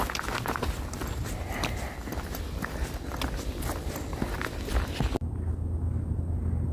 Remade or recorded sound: recorded